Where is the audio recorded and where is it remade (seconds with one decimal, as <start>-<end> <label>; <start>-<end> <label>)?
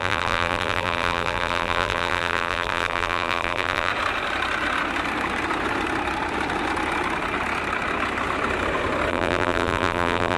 0.0-3.9 remade; 3.9-9.1 recorded; 9.1-10.4 remade